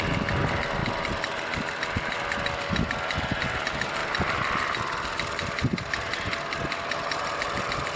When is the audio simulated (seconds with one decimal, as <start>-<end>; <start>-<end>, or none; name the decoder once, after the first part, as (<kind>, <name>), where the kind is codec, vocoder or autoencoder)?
none